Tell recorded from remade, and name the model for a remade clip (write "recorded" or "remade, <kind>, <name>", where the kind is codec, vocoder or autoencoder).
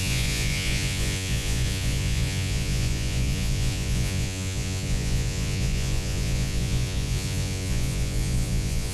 remade, vocoder, Vocos